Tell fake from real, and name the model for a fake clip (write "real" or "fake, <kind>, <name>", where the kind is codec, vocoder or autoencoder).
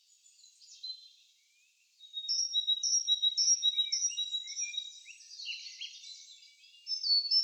real